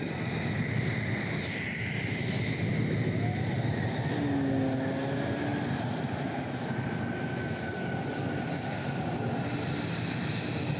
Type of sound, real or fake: real